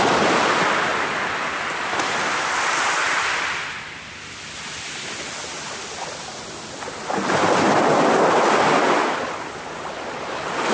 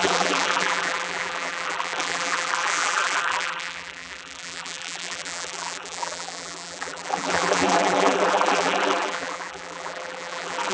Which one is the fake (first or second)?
second